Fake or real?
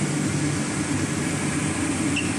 real